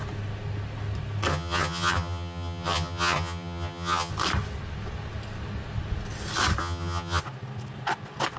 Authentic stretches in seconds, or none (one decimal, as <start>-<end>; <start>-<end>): 0.0-1.3; 4.1-6.6; 7.2-8.4